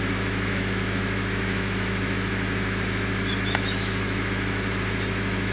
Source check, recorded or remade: remade